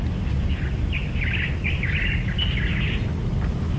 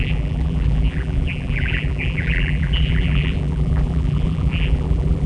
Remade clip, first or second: second